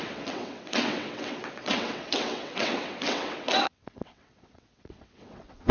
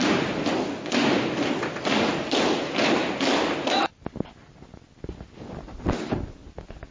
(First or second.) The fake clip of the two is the first